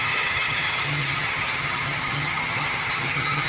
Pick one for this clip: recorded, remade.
remade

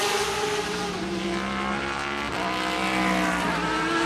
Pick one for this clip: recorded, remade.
recorded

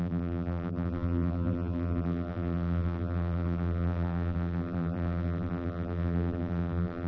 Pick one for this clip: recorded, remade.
remade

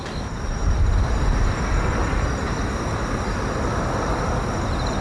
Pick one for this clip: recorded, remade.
recorded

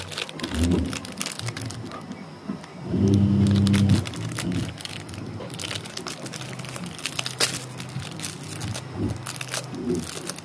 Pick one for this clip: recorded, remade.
recorded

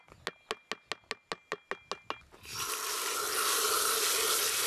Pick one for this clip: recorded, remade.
recorded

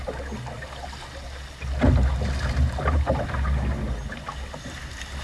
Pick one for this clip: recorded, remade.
recorded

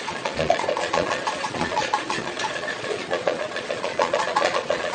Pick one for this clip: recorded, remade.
remade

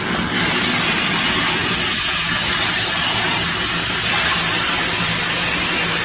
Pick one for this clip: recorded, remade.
recorded